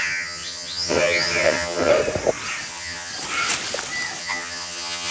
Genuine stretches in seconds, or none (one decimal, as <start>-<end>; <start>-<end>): 1.9-2.7; 3.1-4.2